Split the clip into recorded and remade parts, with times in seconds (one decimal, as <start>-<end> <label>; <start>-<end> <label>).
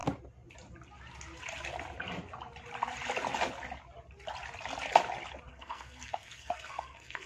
0.0-5.5 recorded; 5.5-7.3 remade